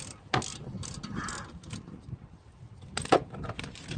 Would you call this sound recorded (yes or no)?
yes